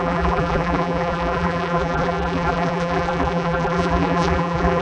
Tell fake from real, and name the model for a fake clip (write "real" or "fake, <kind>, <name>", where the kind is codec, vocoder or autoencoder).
fake, vocoder, BigVGAN v2